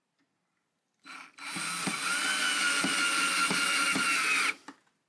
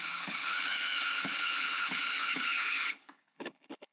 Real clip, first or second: first